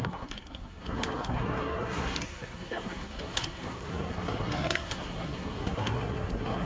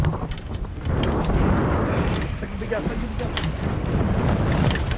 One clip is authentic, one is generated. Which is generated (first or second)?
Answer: first